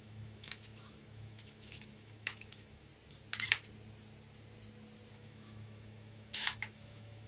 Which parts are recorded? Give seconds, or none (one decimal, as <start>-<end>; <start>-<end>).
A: 2.9-5.1